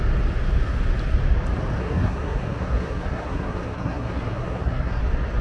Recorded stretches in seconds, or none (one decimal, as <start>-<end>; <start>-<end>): 0.0-1.8; 5.0-5.4